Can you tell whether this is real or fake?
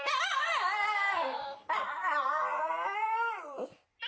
real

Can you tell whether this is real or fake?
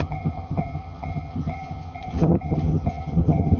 fake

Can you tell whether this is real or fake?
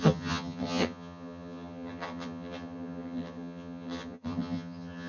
fake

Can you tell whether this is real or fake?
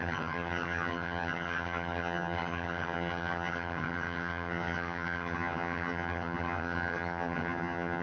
fake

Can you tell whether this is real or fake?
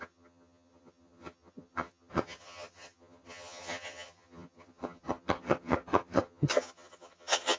fake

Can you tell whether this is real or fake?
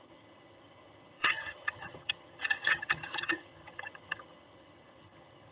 fake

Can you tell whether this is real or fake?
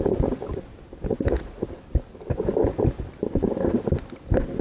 real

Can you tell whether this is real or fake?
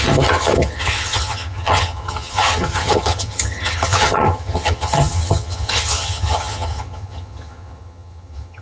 fake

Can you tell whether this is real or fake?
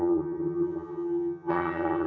fake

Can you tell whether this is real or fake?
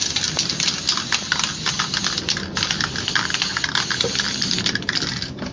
real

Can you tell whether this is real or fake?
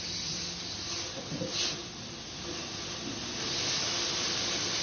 real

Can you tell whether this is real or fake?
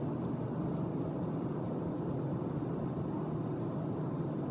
real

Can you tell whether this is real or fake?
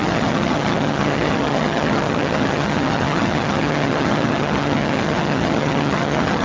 fake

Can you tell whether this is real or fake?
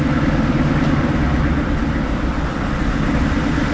real